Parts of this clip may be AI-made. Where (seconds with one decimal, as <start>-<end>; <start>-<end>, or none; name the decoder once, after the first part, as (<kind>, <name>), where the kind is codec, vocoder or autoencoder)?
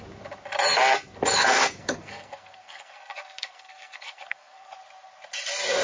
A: 1.4-4.7 (codec, SNAC)